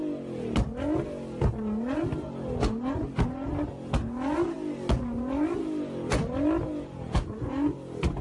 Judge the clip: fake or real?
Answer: real